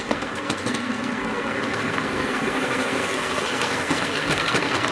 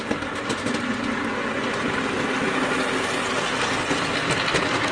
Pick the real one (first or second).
second